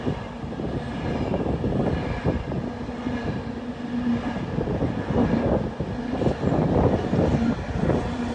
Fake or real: real